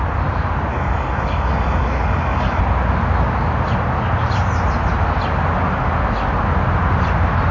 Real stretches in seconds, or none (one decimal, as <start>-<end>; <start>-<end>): 0.0-0.7; 2.6-7.5